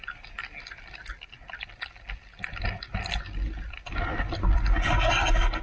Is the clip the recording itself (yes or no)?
yes